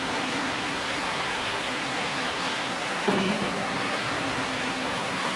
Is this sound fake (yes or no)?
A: yes